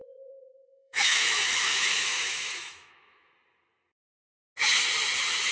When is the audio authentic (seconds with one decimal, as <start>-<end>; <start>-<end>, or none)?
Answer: 3.3-5.5